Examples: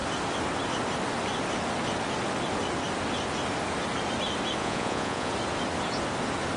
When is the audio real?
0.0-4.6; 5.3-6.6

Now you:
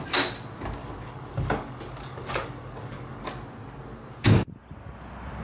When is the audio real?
0.0-0.8; 3.2-5.4

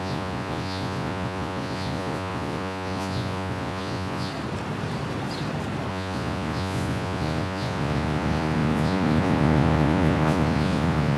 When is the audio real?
4.3-5.9

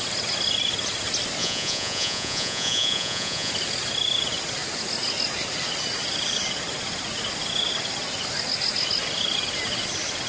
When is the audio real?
0.0-1.4; 3.5-10.3